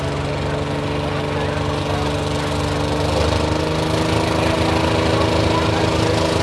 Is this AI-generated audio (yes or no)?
no